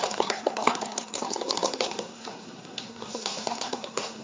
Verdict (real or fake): fake